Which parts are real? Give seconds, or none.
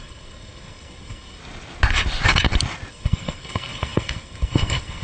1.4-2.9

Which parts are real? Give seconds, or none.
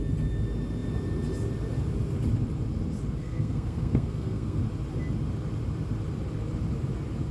0.0-3.2; 4.6-7.3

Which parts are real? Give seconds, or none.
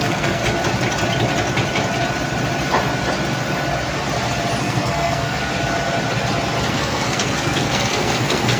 0.4-4.6; 5.5-6.7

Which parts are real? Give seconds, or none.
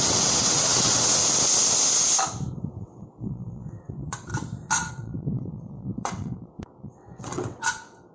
1.2-2.8; 4.3-4.9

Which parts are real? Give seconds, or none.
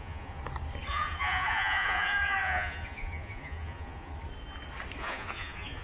0.4-0.9; 4.1-5.0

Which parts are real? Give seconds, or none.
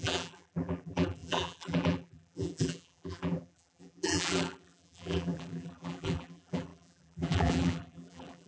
none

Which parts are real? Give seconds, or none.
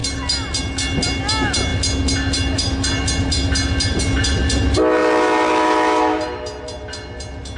0.0-7.6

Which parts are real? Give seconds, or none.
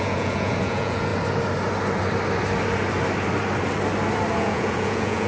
1.1-4.3